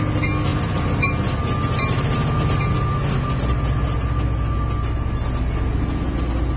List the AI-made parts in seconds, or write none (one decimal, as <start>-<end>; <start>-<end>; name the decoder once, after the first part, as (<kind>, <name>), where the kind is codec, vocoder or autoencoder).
0.5-1.4 (vocoder, BigVGAN v2)